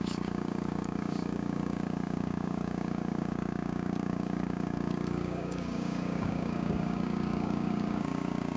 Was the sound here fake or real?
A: fake